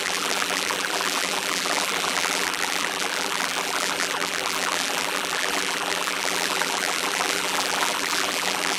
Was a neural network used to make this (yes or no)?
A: yes